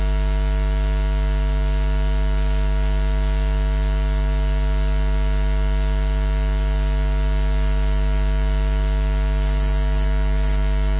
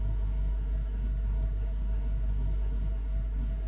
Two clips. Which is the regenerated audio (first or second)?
second